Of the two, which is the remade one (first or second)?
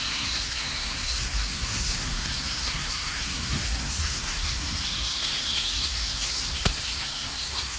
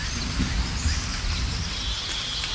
first